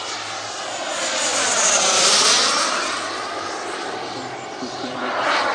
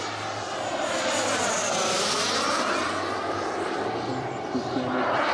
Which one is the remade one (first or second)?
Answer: first